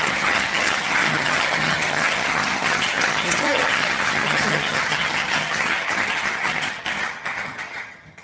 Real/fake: fake